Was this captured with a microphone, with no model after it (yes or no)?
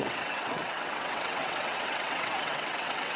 no